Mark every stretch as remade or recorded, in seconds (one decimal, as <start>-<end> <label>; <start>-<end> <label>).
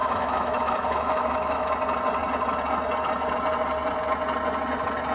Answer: 0.0-1.7 remade; 1.7-5.1 recorded